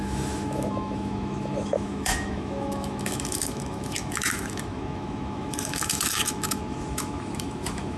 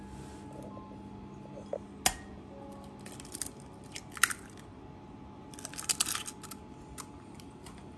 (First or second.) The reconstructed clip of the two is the first